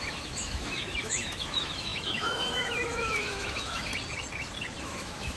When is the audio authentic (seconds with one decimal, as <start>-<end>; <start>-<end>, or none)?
3.9-4.8